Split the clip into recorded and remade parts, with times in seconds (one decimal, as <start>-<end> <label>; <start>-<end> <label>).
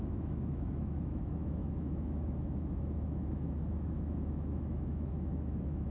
0.0-5.9 remade